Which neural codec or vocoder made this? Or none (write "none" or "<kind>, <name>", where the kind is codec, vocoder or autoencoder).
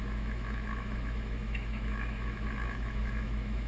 autoencoder, DAC-VAE